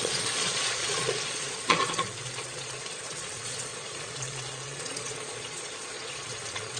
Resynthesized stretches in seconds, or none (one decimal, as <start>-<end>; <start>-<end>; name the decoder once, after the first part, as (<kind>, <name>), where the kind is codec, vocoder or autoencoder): 0.0-6.8 (vocoder, Vocos)